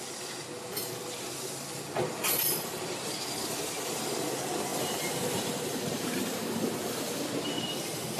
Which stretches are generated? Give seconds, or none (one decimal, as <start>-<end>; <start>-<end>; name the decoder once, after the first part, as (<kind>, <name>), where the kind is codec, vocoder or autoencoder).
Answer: 4.7-8.2 (vocoder, BigVGAN v2)